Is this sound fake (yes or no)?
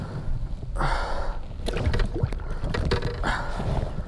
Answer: no